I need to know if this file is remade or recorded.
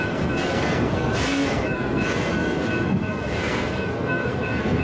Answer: remade